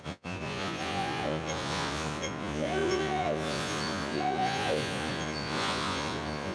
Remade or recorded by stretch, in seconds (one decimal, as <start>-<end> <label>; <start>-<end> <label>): 0.0-6.5 remade

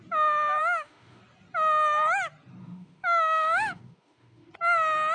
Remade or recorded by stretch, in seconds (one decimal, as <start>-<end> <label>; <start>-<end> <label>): 0.0-0.6 recorded; 0.6-1.2 remade; 1.2-2.6 recorded; 2.6-4.5 remade; 4.5-5.1 recorded

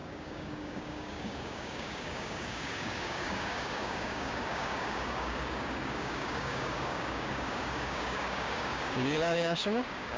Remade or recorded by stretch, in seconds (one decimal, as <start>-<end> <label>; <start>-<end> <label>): 0.0-10.2 remade

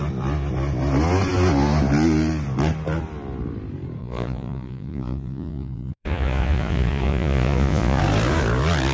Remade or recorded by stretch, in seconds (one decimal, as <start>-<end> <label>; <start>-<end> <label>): 0.0-4.0 recorded; 4.0-8.0 remade; 8.0-8.9 recorded